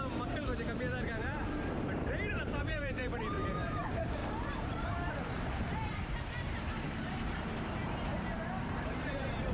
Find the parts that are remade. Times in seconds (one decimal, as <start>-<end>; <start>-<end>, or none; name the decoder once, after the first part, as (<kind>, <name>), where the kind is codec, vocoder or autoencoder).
0.0-0.5 (vocoder, BigVGAN v2); 1.2-9.5